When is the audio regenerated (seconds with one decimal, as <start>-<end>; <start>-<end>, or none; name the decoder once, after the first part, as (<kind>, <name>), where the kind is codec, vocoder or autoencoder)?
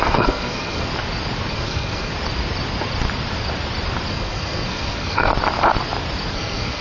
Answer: 0.0-0.9 (codec, SNAC); 1.5-2.1; 4.1-5.3; 6.3-6.8